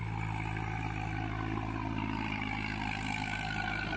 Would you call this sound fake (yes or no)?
no